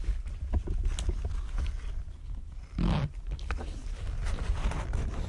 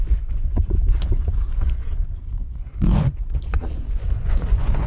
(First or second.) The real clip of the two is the first